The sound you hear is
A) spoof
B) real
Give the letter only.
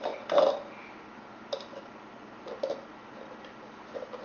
B